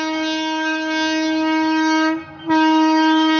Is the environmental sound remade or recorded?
remade